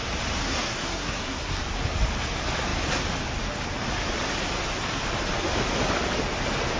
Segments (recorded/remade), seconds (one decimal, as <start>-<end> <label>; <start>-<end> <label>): 0.0-0.4 recorded; 0.4-1.6 remade; 1.6-6.8 recorded